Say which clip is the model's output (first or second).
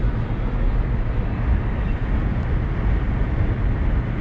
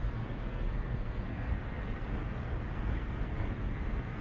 second